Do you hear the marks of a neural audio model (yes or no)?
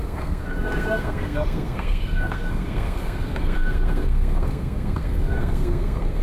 yes